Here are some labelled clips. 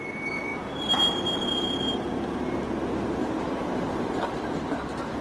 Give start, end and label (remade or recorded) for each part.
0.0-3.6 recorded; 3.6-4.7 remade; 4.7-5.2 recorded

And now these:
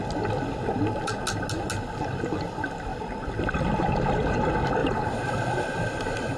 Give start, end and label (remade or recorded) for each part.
0.0-4.8 recorded; 4.8-6.4 remade